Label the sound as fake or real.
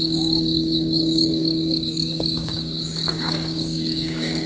fake